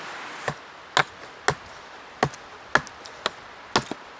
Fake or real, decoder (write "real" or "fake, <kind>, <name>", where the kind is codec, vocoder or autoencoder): real